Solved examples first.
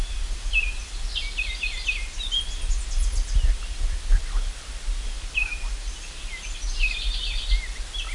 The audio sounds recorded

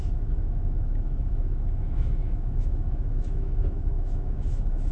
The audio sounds remade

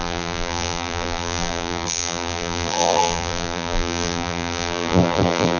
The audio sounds remade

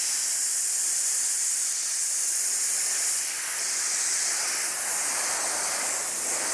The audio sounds recorded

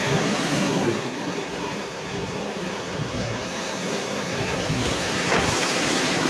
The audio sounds remade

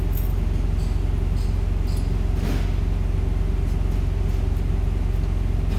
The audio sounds recorded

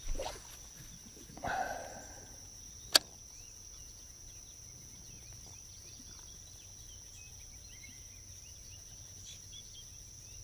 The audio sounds recorded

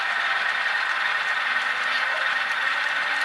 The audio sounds recorded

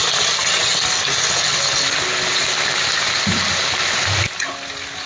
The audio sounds recorded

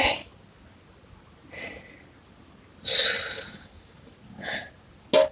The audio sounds recorded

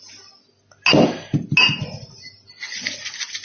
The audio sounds recorded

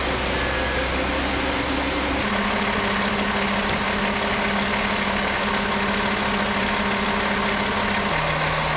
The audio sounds recorded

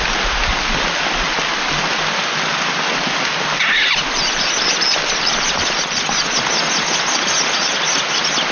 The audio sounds recorded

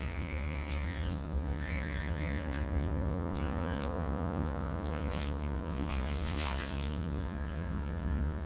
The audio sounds remade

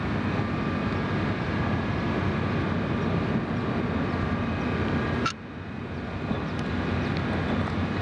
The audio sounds recorded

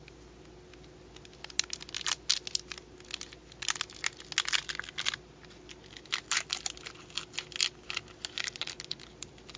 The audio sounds recorded